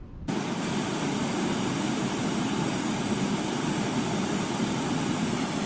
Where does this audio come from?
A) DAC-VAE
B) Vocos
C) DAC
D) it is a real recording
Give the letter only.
D